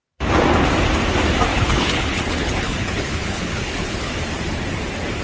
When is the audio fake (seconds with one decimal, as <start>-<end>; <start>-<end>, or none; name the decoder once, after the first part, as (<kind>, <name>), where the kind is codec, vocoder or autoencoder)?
1.5-4.1 (codec, HILCodec)